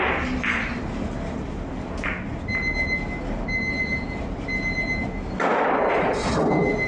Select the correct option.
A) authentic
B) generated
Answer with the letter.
A